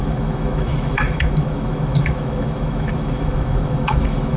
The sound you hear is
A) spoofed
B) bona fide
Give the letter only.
A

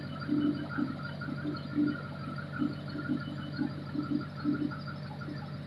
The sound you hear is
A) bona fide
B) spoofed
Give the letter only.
A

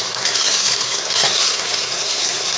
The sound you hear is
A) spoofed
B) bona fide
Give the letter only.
A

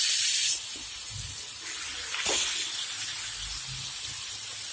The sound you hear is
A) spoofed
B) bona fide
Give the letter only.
B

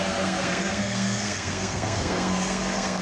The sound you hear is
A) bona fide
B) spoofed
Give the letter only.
B